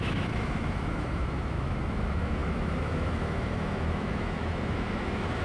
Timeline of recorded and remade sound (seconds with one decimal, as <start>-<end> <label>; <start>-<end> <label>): 0.0-5.4 remade